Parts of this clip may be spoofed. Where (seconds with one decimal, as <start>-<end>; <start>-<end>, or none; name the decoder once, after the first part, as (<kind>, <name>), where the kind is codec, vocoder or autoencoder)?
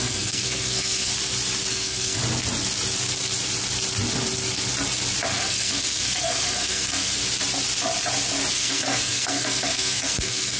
0.0-1.1 (codec, SNAC); 1.7-2.2; 5.3-7.2; 8.5-10.6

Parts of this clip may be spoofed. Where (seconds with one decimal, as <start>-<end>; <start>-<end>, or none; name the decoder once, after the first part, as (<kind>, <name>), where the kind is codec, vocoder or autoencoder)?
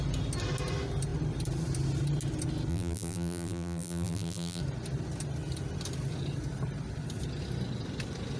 2.7-4.6 (vocoder, BigVGAN v2)